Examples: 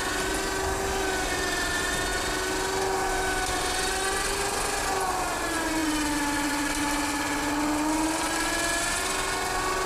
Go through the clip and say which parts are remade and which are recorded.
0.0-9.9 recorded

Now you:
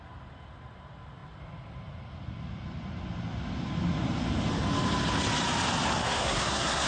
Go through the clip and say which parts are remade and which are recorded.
0.0-6.0 recorded; 6.0-6.9 remade

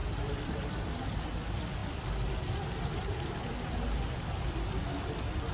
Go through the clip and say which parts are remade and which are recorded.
0.0-0.9 remade; 0.9-1.8 recorded; 1.8-5.1 remade; 5.1-5.5 recorded

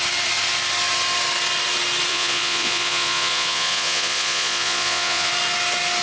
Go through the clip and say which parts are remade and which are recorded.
0.0-2.1 recorded; 2.1-5.3 remade; 5.3-6.0 recorded

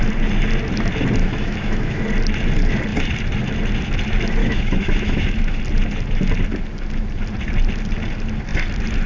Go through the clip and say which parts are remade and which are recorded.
0.0-1.2 recorded; 1.2-2.0 remade; 2.0-4.4 recorded; 4.4-5.6 remade; 5.6-9.1 recorded

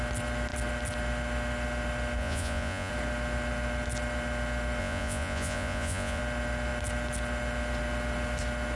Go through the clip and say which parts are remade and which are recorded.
0.0-2.2 recorded; 2.2-2.9 remade; 2.9-4.8 recorded; 4.8-6.2 remade; 6.2-8.8 recorded

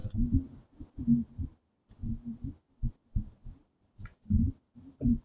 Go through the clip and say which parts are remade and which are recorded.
0.0-5.2 recorded

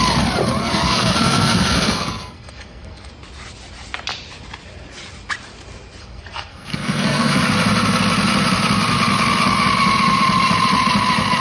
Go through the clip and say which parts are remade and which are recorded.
0.0-0.6 recorded; 0.6-3.1 remade; 3.1-6.0 recorded; 6.0-7.4 remade; 7.4-11.4 recorded